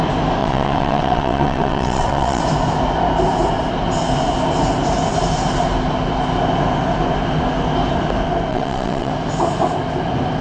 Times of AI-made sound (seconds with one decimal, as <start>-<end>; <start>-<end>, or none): 0.4-2.4; 8.5-9.1